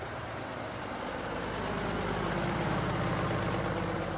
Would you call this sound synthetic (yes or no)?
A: no